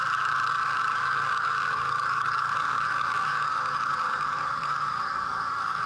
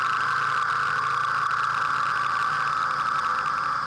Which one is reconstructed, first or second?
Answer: first